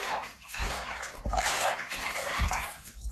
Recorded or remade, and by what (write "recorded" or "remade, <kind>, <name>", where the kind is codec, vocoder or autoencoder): remade, codec, SNAC